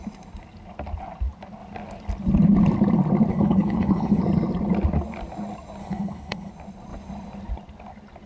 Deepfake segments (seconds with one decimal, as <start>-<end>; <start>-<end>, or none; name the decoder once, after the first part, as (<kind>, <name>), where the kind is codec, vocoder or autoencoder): 3.3-4.2 (codec, HILCodec); 5.8-6.5